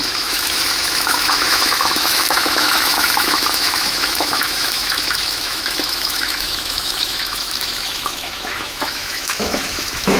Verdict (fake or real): fake